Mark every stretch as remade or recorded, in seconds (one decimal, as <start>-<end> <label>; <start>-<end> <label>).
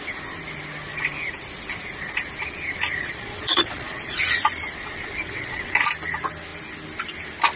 0.0-3.0 recorded; 3.0-4.2 remade; 4.2-5.0 recorded; 5.0-5.9 remade; 5.9-7.6 recorded